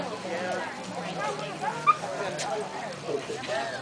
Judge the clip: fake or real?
real